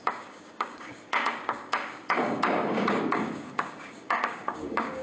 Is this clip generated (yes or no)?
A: yes